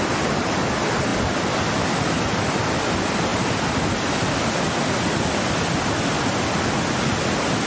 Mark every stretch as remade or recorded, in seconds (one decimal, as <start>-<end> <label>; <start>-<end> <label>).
0.0-7.7 recorded